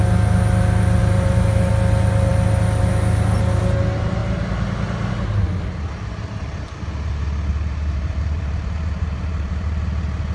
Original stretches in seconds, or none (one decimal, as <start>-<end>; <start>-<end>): 0.0-1.0; 1.7-7.5; 9.8-10.3